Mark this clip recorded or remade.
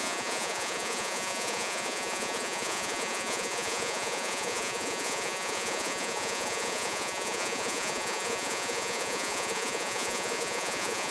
remade